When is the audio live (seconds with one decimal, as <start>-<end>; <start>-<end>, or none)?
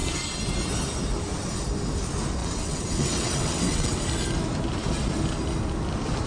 0.0-2.4; 4.0-6.3